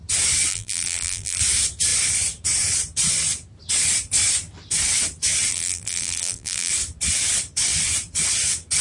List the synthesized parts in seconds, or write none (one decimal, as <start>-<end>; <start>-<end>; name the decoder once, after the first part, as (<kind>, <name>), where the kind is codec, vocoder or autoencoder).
0.5-1.4 (vocoder, BigVGAN v2); 5.5-6.7